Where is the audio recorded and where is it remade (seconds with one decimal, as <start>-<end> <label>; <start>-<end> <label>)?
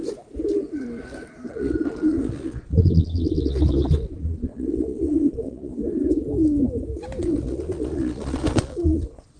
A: 0.0-1.5 recorded; 1.5-5.7 remade; 5.7-7.2 recorded; 7.2-9.4 remade